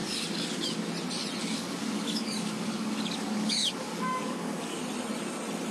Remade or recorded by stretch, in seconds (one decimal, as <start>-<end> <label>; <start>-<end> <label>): 0.0-0.9 remade; 0.9-1.4 recorded; 1.4-4.8 remade; 4.8-5.7 recorded